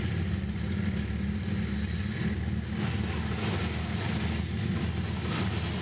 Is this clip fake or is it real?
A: real